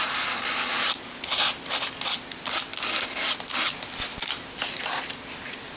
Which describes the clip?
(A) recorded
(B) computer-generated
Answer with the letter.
A